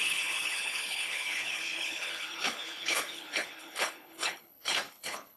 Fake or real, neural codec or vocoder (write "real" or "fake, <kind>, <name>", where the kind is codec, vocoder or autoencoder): fake, codec, HILCodec